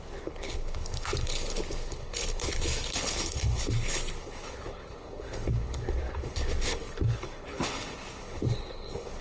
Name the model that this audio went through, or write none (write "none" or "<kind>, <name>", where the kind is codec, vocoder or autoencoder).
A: codec, HILCodec